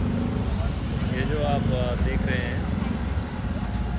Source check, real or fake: real